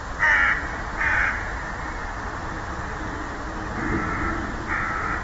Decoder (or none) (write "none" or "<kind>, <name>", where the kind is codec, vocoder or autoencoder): none